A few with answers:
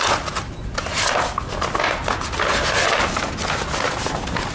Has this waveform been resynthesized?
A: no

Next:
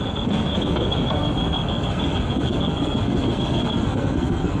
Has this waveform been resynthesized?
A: yes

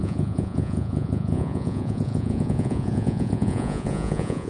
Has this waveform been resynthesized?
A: yes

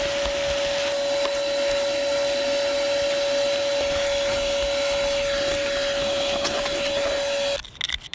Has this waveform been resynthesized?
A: no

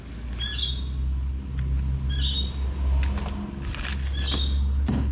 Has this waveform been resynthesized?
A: no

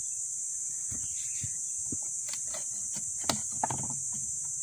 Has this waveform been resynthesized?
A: no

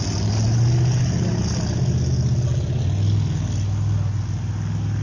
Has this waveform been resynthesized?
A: no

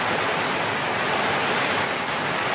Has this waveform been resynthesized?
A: no